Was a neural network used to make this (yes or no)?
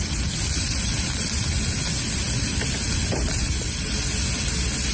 no